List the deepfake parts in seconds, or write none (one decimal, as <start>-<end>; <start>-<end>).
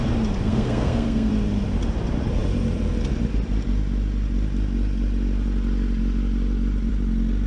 0.4-1.3